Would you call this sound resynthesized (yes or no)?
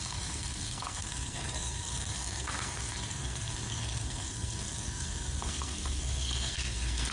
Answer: yes